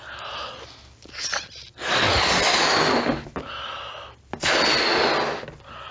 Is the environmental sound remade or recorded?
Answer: recorded